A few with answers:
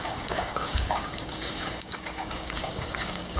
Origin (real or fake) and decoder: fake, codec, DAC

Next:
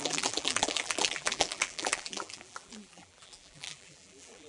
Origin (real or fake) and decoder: fake, vocoder, BigVGAN v2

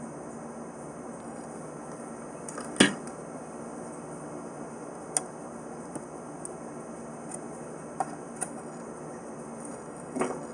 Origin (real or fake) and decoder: real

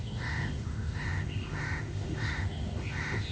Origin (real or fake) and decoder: fake, autoencoder, DAC-VAE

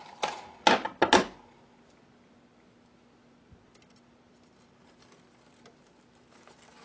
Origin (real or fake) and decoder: real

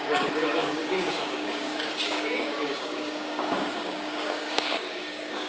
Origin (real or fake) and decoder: fake, codec, DAC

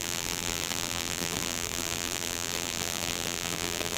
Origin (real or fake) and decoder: fake, vocoder, BigVGAN v2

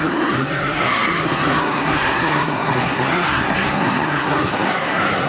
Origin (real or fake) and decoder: fake, codec, SNAC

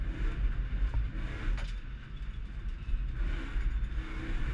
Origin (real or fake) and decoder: real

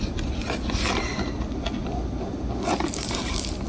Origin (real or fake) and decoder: real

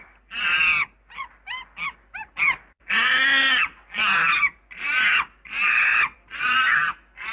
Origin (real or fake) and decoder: real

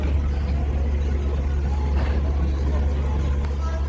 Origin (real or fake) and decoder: real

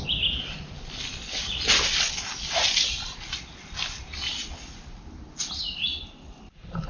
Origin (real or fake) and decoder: real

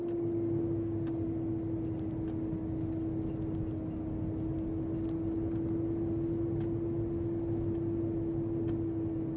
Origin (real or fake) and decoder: real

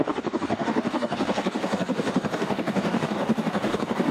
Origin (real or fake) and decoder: fake, codec, DAC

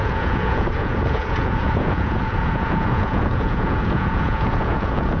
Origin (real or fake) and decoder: fake, vocoder, Vocos